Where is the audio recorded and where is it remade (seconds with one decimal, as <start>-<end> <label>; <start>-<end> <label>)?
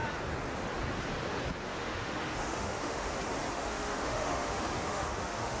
0.0-1.6 recorded; 1.6-3.1 remade; 3.1-3.5 recorded; 3.5-5.6 remade